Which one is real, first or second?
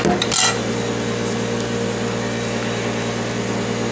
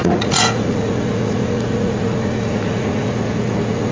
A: first